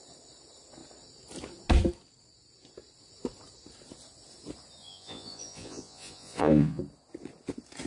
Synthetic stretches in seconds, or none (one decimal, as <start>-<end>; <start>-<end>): 4.8-6.8